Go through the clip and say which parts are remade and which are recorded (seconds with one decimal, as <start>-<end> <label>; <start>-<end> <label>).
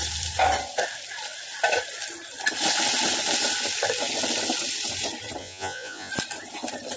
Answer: 0.0-5.4 recorded; 5.4-6.1 remade; 6.1-7.0 recorded